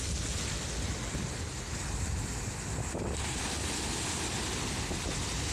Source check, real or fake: real